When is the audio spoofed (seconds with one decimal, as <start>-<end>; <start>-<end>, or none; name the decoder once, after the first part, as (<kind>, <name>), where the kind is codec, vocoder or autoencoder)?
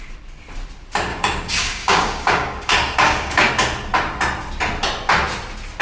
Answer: 1.1-3.5 (codec, DAC)